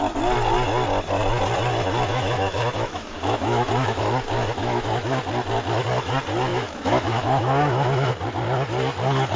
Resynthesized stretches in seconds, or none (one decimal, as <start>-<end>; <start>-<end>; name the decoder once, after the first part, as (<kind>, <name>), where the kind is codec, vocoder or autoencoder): 2.1-4.0 (autoencoder, DAC-VAE); 4.6-5.2; 6.5-8.1